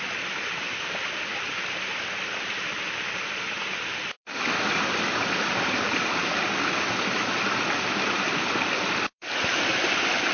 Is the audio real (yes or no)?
no